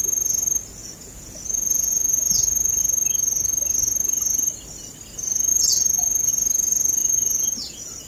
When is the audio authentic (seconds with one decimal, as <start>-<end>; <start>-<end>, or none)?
0.0-0.8; 2.8-5.5; 6.3-7.0